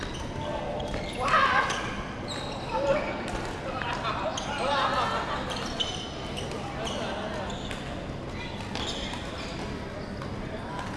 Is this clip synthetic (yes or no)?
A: no